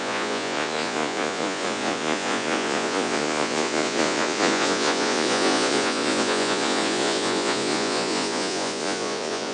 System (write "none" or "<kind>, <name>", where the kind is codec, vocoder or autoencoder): vocoder, Vocos